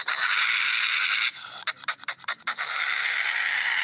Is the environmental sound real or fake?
real